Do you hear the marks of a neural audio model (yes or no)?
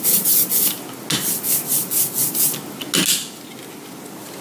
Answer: no